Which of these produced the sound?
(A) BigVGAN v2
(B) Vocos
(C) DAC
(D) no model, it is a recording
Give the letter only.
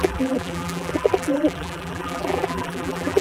A